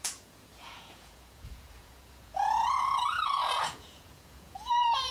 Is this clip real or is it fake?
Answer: fake